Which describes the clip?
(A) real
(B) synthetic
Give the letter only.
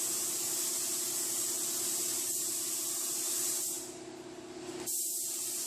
A